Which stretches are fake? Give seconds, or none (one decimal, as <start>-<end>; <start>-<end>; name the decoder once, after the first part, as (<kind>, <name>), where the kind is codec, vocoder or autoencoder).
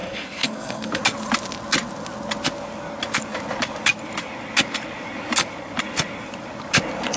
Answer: 0.0-1.0 (codec, SNAC)